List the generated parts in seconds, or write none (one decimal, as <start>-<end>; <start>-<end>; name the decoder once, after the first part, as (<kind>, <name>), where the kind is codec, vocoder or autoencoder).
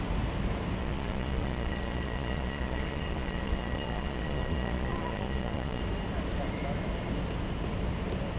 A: 0.8-5.8 (vocoder, Vocos)